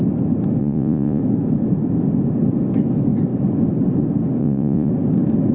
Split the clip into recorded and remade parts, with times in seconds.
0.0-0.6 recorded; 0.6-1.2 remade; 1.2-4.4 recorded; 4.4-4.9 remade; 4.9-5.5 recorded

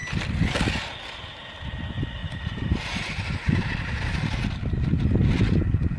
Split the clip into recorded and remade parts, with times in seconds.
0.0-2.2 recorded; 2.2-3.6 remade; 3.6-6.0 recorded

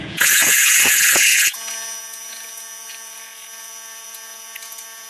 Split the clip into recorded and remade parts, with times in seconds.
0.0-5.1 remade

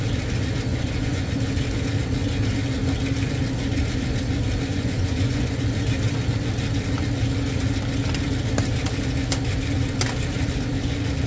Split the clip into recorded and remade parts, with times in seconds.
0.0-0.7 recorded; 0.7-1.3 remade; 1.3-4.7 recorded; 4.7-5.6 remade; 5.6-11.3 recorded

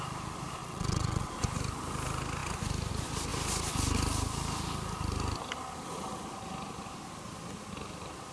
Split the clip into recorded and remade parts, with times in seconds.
0.0-0.6 recorded; 0.6-1.3 remade; 1.3-8.3 recorded